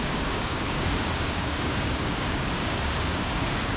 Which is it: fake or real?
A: fake